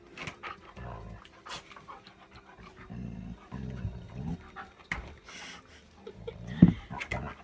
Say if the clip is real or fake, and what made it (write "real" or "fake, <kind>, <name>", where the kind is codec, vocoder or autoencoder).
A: real